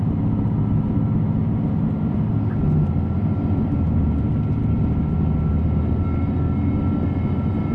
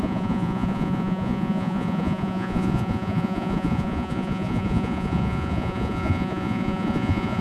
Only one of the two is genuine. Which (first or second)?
first